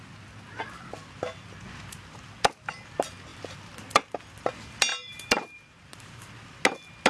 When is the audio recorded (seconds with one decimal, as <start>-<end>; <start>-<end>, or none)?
0.0-4.9; 6.3-7.1